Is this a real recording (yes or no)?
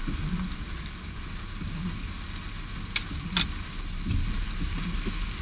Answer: yes